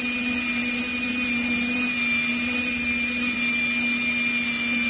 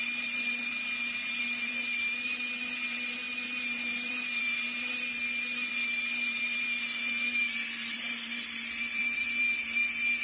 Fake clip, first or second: second